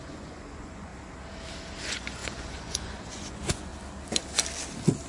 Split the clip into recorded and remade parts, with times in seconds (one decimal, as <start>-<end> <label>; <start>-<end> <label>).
0.0-0.9 remade; 0.9-1.8 recorded; 1.8-3.7 remade; 3.7-5.1 recorded